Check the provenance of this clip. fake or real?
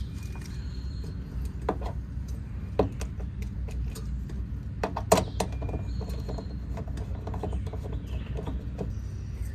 real